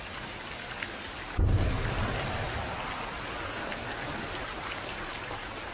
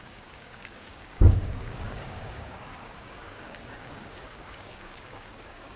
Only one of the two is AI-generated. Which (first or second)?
second